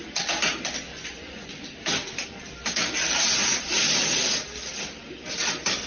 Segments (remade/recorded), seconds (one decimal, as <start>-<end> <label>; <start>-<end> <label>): 0.0-0.9 recorded; 0.9-1.6 remade; 1.6-5.9 recorded